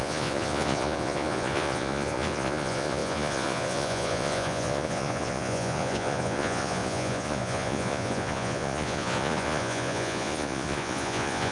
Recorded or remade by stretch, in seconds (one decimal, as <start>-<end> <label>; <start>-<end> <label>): 0.0-11.5 remade